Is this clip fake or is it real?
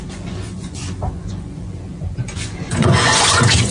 fake